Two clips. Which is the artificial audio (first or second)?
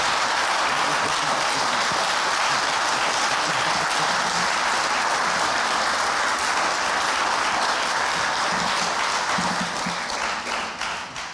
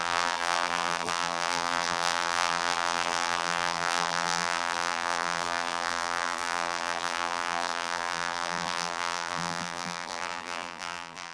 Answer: second